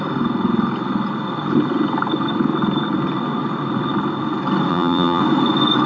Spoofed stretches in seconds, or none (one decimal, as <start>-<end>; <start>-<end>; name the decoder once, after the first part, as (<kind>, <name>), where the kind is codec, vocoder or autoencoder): 4.7-5.2 (vocoder, BigVGAN v2)